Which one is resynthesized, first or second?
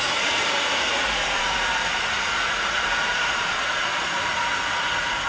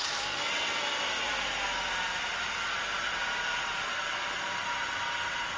first